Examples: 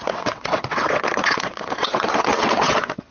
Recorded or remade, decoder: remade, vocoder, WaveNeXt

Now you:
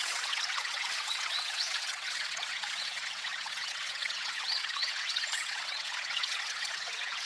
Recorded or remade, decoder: remade, vocoder, WaveNeXt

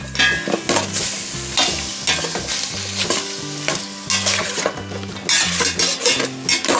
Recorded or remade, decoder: recorded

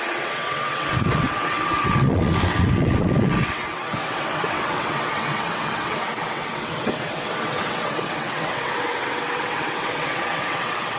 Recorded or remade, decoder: remade, vocoder, WaveNeXt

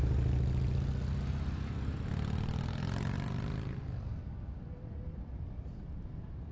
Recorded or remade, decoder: recorded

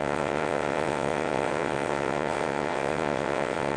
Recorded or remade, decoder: remade, vocoder, WaveNeXt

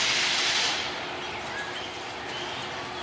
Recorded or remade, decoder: recorded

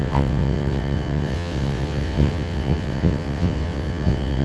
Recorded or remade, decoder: remade, vocoder, WaveNeXt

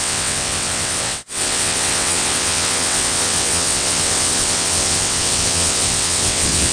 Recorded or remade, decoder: remade, vocoder, WaveNeXt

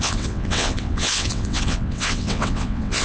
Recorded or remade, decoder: remade, vocoder, WaveNeXt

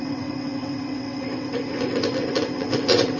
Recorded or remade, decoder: remade, vocoder, WaveNeXt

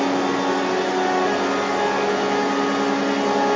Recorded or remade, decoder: recorded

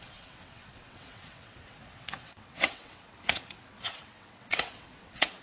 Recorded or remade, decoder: remade, vocoder, WaveNeXt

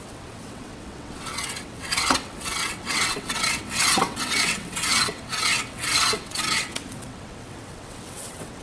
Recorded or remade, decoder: remade, vocoder, WaveNeXt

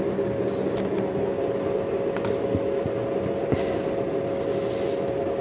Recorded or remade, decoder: recorded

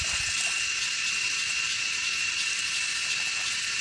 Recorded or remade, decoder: recorded